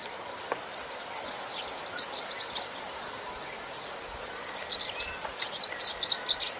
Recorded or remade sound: recorded